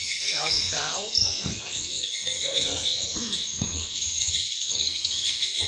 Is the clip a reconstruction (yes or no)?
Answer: yes